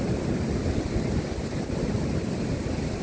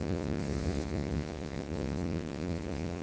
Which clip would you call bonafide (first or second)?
first